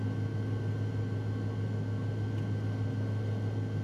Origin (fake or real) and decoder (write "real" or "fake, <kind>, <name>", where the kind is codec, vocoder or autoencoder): real